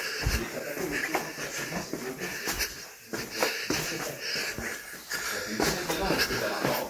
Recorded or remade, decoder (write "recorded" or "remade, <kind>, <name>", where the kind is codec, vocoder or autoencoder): recorded